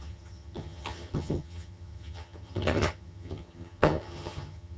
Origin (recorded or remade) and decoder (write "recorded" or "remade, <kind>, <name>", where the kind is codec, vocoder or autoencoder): remade, vocoder, HiFi-GAN